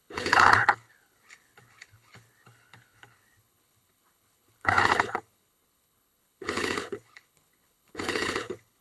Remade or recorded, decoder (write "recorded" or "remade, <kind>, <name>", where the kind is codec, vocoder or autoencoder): remade, codec, HILCodec